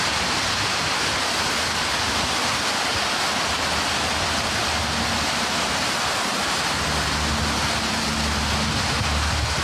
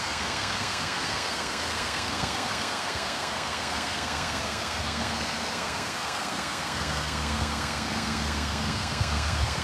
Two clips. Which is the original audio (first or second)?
first